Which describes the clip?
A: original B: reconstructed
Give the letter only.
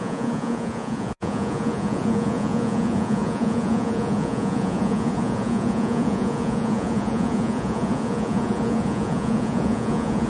B